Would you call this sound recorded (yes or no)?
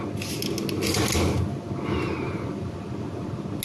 yes